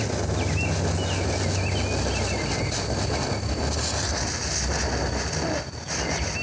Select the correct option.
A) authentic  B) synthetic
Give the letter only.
A